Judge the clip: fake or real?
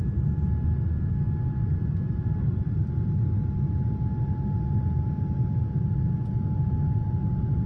real